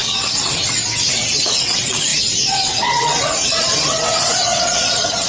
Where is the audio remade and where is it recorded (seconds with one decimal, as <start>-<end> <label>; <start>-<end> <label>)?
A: 0.0-5.3 remade